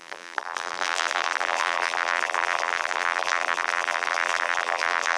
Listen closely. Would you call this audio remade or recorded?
remade